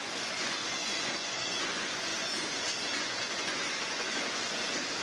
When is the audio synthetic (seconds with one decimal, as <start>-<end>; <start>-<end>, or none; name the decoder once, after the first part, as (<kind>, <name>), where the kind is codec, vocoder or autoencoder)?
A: 0.0-5.0 (vocoder, Vocos)